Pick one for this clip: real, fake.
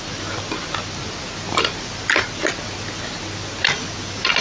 real